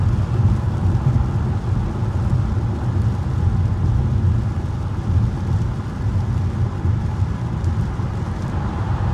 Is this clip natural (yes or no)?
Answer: yes